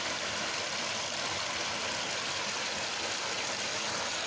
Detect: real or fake real